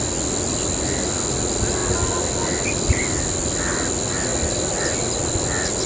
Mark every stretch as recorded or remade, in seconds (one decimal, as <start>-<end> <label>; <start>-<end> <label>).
0.0-5.9 recorded